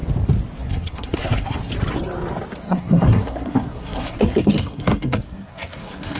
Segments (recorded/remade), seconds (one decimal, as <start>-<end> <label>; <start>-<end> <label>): 0.0-0.6 recorded; 0.6-1.7 remade; 1.7-2.6 recorded; 2.6-6.2 remade